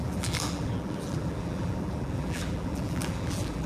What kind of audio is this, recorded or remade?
remade